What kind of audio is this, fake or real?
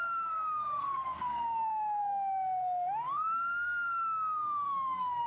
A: fake